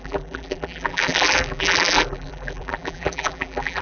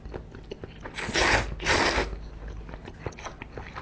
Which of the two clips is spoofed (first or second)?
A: first